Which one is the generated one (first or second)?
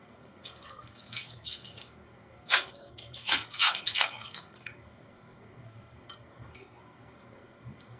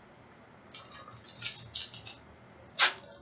first